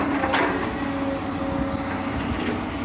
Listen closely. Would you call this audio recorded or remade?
recorded